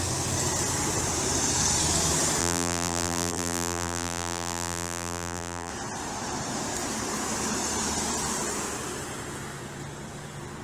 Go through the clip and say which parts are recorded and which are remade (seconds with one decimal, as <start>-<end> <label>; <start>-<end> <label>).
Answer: 0.0-2.4 recorded; 2.4-5.7 remade; 5.7-10.6 recorded